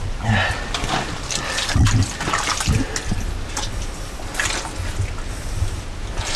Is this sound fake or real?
real